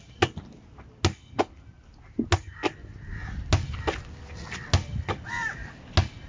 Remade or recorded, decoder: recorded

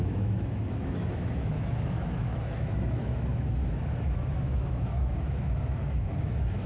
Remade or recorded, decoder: remade, autoencoder, DAC-VAE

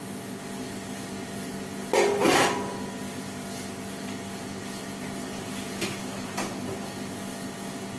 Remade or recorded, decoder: recorded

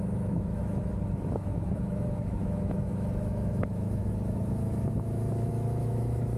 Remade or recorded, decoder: remade, autoencoder, DAC-VAE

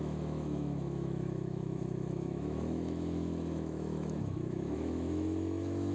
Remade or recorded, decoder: remade, autoencoder, DAC-VAE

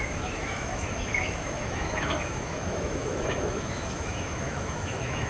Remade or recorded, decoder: remade, autoencoder, DAC-VAE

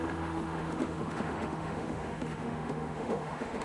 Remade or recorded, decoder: remade, autoencoder, DAC-VAE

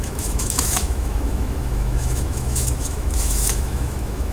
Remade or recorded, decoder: remade, autoencoder, DAC-VAE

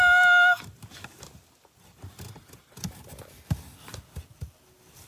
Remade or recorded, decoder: recorded